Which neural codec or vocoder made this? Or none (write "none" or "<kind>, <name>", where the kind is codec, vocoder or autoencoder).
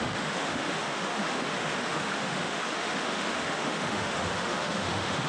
autoencoder, DAC-VAE